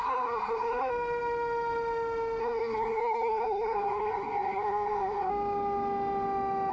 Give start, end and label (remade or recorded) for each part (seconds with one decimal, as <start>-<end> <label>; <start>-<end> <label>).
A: 0.0-0.9 remade; 0.9-2.4 recorded; 2.4-5.3 remade; 5.3-6.7 recorded